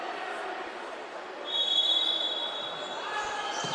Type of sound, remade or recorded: recorded